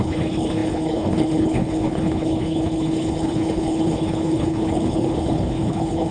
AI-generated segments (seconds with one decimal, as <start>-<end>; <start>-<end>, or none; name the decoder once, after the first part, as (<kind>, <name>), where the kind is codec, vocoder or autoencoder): 0.0-6.1 (codec, HILCodec)